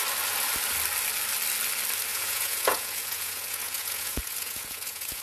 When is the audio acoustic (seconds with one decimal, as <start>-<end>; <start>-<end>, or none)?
0.0-2.1